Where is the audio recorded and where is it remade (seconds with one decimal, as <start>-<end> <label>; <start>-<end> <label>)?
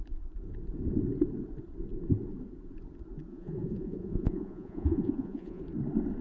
0.0-3.3 recorded; 3.3-5.6 remade; 5.6-6.2 recorded